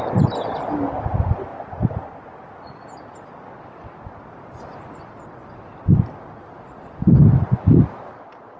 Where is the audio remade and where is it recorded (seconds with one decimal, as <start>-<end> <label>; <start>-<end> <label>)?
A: 0.0-8.6 recorded